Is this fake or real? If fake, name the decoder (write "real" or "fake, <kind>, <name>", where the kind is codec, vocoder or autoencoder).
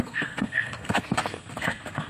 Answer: fake, codec, SNAC